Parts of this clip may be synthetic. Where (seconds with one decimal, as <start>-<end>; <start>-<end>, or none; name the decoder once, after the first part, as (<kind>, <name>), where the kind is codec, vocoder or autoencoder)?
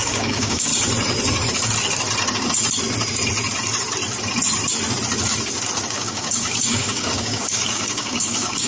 0.0-0.7 (codec, DAC); 5.9-8.7